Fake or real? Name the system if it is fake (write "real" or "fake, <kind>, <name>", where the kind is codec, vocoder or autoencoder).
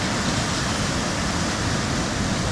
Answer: real